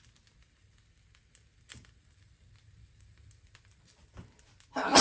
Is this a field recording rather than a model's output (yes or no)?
yes